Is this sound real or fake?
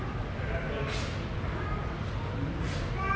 real